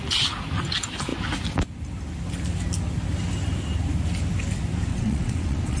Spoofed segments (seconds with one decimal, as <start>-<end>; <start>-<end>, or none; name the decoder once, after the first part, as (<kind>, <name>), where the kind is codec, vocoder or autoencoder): 4.9-5.8 (vocoder, WaveNeXt)